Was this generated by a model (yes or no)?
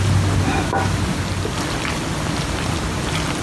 no